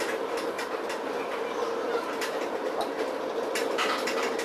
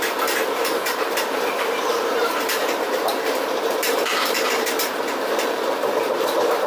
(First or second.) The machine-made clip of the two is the second